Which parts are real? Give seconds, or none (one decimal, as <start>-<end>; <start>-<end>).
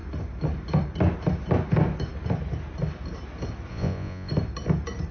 0.0-3.7; 4.3-5.1